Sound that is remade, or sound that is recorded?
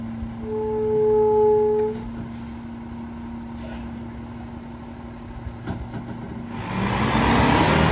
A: recorded